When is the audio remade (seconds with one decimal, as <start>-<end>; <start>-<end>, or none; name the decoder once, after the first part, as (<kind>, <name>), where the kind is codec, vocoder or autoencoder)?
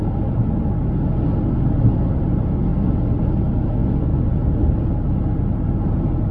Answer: none